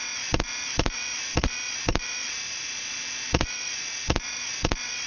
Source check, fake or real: fake